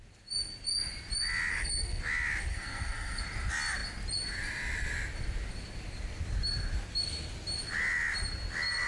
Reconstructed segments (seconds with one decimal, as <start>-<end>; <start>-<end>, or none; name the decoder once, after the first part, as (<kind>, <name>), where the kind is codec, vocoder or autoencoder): 1.5-2.0 (codec, SNAC); 2.5-3.2